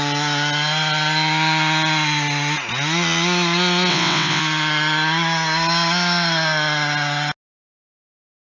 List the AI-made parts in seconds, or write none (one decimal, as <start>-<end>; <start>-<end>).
3.9-4.4